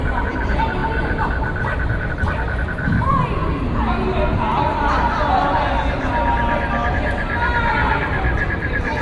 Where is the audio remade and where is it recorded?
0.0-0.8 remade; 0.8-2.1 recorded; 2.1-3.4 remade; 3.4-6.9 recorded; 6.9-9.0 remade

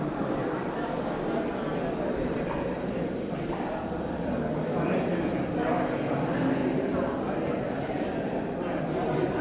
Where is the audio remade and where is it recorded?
0.0-5.1 remade; 5.1-6.1 recorded; 6.1-6.6 remade; 6.6-7.6 recorded; 7.6-9.4 remade

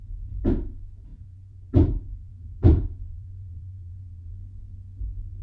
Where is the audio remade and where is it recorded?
0.0-1.1 recorded; 1.1-4.3 remade; 4.3-5.4 recorded